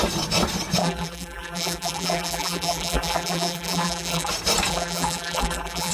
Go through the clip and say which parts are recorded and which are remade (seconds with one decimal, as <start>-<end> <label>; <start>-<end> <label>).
0.0-0.8 recorded; 0.8-4.3 remade; 4.3-4.7 recorded; 4.7-5.9 remade